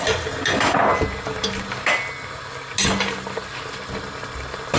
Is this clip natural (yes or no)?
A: yes